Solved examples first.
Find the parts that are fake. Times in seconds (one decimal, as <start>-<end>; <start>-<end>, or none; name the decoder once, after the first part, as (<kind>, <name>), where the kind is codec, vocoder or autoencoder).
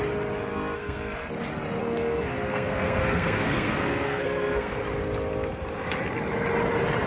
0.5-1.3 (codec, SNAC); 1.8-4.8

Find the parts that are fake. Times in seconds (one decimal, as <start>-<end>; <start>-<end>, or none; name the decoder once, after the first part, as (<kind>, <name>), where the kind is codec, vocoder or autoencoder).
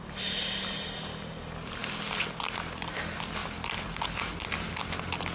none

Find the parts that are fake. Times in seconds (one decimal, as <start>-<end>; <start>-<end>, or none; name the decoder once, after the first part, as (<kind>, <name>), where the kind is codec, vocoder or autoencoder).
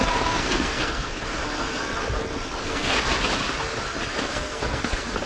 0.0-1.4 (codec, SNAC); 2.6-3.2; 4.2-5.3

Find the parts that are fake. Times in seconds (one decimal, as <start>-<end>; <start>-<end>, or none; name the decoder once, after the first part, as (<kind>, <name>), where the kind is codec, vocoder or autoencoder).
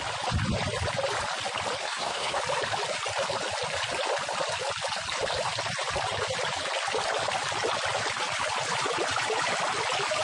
1.8-2.4 (codec, SNAC)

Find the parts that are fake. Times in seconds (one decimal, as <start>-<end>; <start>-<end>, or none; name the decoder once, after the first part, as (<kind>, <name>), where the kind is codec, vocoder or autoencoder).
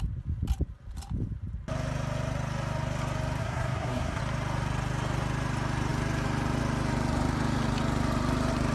3.4-4.2 (codec, SNAC)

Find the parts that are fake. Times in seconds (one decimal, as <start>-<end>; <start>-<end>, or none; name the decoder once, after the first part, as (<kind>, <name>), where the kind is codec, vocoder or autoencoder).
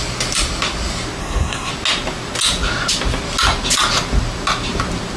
1.2-1.7 (codec, SNAC)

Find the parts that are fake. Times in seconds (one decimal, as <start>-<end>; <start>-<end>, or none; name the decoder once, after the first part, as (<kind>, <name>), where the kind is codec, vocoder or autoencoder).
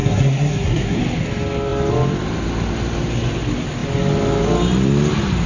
0.0-1.0 (codec, SNAC)